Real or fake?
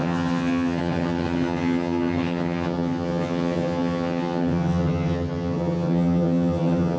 fake